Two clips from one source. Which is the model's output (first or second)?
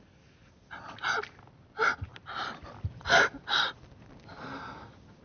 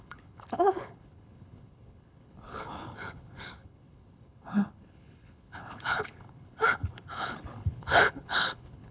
second